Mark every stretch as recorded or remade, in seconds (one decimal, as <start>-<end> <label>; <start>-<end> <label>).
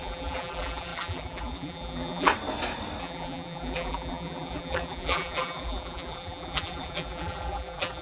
0.0-2.3 remade; 2.3-3.0 recorded; 3.0-8.0 remade